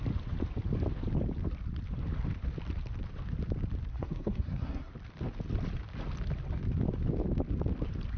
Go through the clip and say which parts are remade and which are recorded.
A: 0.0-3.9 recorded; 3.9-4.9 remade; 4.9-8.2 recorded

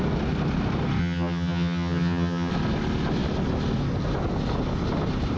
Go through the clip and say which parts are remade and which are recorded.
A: 0.0-1.0 recorded; 1.0-2.5 remade; 2.5-5.4 recorded

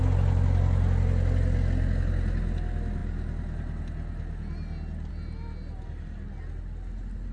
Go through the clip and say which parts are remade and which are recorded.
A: 0.0-7.3 recorded

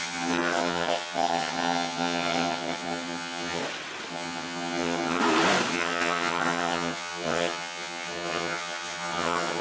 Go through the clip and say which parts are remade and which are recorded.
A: 0.0-3.6 remade; 3.6-4.1 recorded; 4.1-5.2 remade; 5.2-5.7 recorded; 5.7-9.6 remade

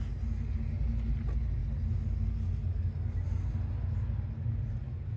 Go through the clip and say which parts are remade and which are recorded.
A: 0.0-5.2 recorded

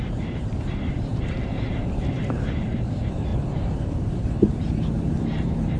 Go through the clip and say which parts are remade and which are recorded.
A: 0.0-5.8 remade

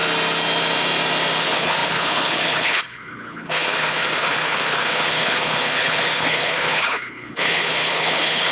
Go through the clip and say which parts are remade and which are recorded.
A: 0.0-1.4 recorded; 1.4-8.5 remade